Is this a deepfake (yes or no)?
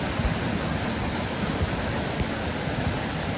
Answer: no